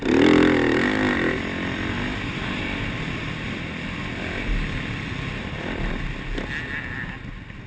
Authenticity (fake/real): real